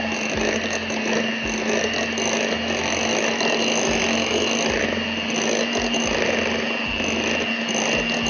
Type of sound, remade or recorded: recorded